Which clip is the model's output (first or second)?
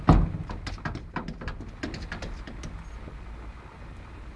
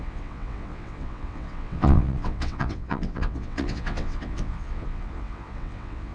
second